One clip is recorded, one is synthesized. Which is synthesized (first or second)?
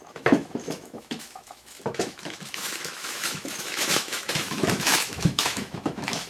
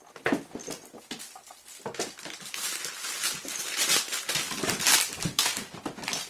first